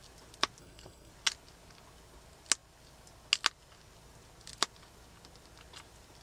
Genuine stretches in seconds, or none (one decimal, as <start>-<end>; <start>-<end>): 0.0-0.6; 1.1-6.2